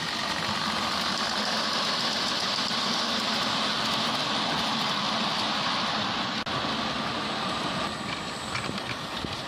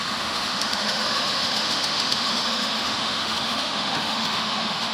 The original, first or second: first